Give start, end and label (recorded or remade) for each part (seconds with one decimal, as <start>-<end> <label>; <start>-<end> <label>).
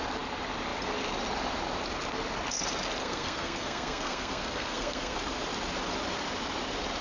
0.0-3.0 recorded; 3.0-5.2 remade; 5.2-7.0 recorded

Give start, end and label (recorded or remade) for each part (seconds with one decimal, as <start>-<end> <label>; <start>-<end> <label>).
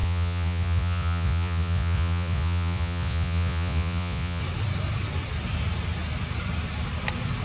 0.0-4.4 remade; 4.4-7.4 recorded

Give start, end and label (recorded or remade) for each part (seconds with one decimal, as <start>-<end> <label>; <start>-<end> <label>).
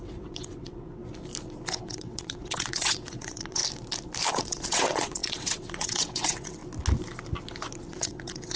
0.0-1.0 remade; 1.0-1.7 recorded; 1.7-3.6 remade; 3.6-4.3 recorded; 4.3-6.6 remade; 6.6-7.9 recorded; 7.9-8.6 remade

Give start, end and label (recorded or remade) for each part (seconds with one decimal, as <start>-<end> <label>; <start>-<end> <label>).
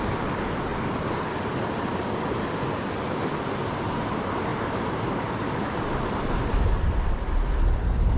0.0-4.5 recorded; 4.5-6.7 remade; 6.7-8.2 recorded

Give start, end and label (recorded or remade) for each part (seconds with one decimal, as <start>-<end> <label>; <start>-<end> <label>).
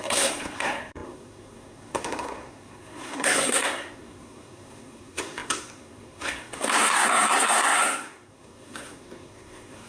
0.0-9.9 remade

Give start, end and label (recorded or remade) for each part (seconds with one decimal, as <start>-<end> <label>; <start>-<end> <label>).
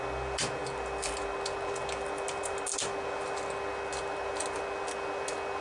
0.0-5.6 recorded